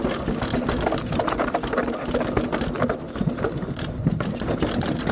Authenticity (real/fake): real